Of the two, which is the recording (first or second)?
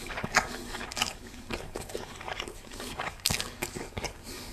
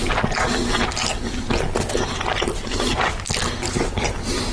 second